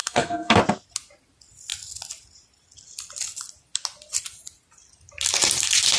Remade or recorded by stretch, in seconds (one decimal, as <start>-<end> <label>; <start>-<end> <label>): 0.0-0.6 remade; 0.6-6.0 recorded

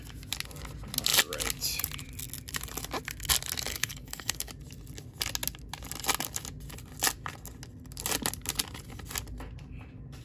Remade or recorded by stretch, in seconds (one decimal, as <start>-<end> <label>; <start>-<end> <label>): 0.0-3.7 recorded; 3.7-4.5 remade; 4.5-10.2 recorded

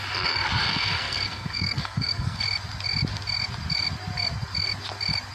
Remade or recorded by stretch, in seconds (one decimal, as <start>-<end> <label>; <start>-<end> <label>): 0.0-0.7 recorded; 0.7-2.4 remade; 2.4-5.3 recorded

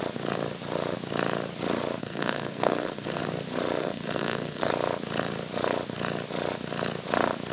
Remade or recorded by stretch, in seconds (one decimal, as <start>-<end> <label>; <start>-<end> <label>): 0.0-2.0 recorded; 2.0-3.2 remade; 3.2-3.8 recorded; 3.8-4.7 remade; 4.7-7.5 recorded

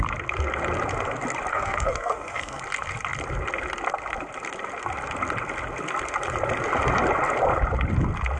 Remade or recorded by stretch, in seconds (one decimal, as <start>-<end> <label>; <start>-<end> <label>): 0.0-1.5 recorded; 1.5-2.6 remade; 2.6-8.4 recorded

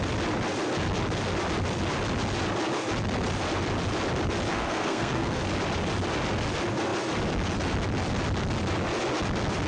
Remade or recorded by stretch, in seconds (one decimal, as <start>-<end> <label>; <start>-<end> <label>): 0.0-4.5 recorded; 4.5-5.4 remade; 5.4-9.7 recorded

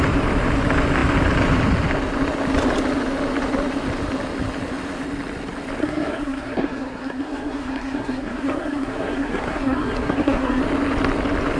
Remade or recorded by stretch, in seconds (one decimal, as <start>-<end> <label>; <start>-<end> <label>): 0.0-5.8 recorded; 5.8-10.6 remade; 10.6-11.6 recorded